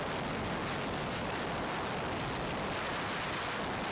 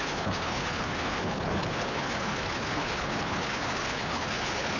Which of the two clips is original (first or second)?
first